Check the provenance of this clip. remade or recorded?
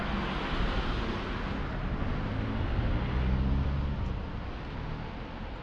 recorded